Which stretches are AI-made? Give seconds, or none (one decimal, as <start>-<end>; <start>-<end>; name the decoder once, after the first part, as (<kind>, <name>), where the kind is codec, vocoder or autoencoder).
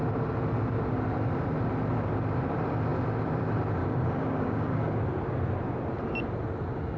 3.8-5.0 (codec, DAC)